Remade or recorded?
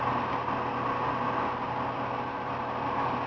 recorded